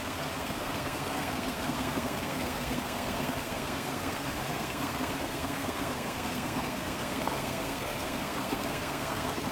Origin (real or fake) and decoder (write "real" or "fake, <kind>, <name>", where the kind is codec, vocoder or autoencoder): fake, codec, SNAC